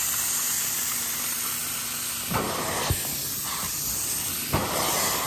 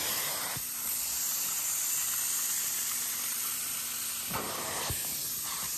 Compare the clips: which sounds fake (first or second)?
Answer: second